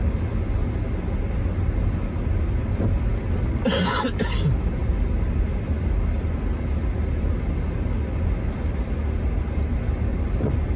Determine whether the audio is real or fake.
real